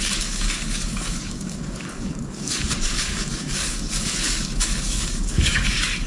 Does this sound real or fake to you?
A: fake